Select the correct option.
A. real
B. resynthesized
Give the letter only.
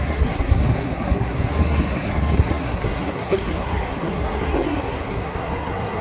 B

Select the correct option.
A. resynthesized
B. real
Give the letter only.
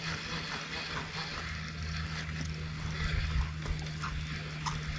B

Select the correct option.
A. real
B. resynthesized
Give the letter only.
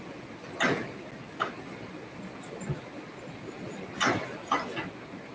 A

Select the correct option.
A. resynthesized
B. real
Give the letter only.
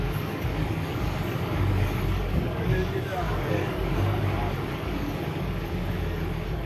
A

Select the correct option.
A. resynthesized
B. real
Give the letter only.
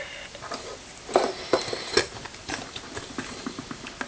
B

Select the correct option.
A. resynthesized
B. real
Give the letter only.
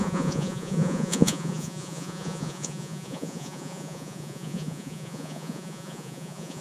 A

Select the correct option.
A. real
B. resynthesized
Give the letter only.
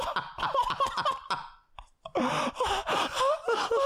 A